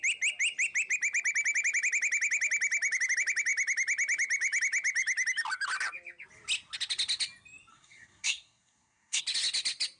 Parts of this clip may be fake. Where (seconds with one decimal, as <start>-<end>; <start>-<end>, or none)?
7.7-9.2